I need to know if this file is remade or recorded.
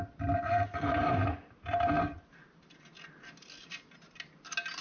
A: recorded